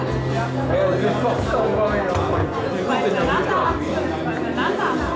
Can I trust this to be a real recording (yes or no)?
yes